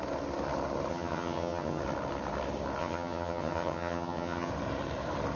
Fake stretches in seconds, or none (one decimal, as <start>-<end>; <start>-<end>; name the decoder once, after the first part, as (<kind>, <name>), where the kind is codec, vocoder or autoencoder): 0.9-1.8 (vocoder, HiFi-GAN); 2.8-4.5